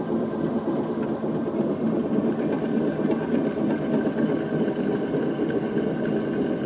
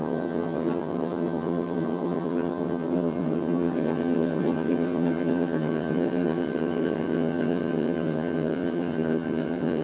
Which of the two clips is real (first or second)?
first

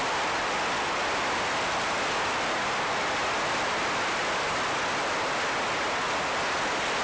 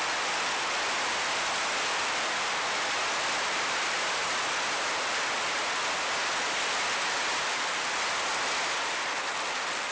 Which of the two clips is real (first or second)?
first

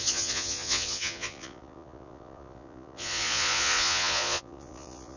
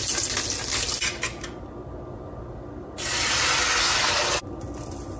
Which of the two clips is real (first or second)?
second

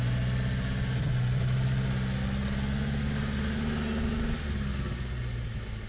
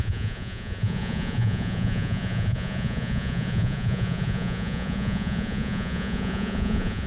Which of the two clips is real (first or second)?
first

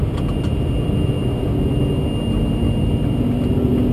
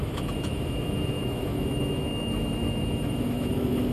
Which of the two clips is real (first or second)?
first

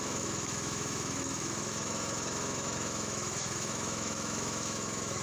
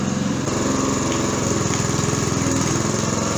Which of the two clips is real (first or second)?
second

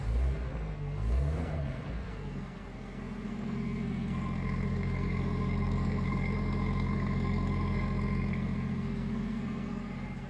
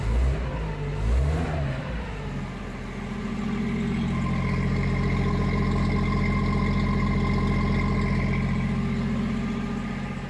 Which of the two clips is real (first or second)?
second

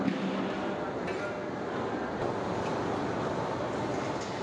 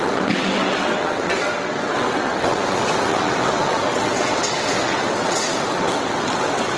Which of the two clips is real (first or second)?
first